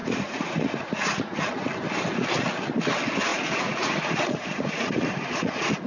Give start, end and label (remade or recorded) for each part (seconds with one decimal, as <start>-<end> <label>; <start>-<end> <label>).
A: 0.0-1.5 remade; 1.5-3.3 recorded; 3.3-5.9 remade